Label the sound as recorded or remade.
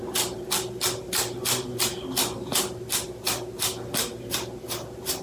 recorded